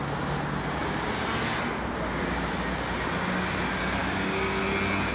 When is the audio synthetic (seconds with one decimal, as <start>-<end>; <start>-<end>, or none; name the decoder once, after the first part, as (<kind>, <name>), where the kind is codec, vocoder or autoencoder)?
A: 4.0-4.6 (codec, DAC)